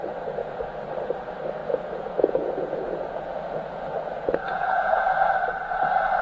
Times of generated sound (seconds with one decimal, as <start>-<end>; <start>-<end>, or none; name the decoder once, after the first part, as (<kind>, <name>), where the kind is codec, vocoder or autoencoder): 0.4-0.9 (vocoder, Vocos); 1.6-5.3